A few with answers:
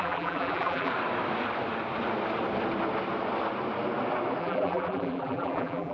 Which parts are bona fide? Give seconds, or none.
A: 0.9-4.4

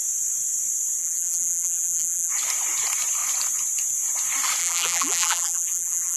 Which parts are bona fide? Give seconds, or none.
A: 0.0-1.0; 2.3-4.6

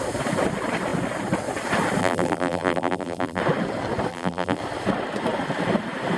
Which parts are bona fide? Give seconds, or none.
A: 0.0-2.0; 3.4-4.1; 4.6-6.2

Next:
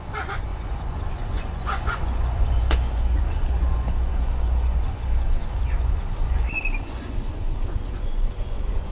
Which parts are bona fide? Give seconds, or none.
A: none